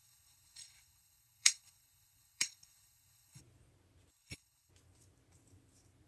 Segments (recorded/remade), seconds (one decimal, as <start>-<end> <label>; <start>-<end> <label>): 0.0-3.4 remade; 3.4-4.1 recorded; 4.1-4.7 remade; 4.7-6.1 recorded